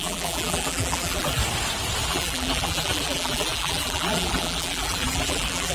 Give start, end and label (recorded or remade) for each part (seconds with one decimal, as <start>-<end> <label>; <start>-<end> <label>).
0.0-1.4 remade; 1.4-2.1 recorded; 2.1-5.7 remade